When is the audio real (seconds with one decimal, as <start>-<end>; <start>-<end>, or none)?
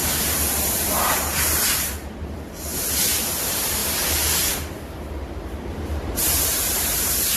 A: 2.7-3.4; 3.8-4.5